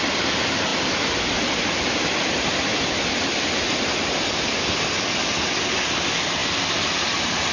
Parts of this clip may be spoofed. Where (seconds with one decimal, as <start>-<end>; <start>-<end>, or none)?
none